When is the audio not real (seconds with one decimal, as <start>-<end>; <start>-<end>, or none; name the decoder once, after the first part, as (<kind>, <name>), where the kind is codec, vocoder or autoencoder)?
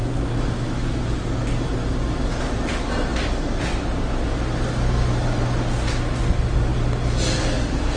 none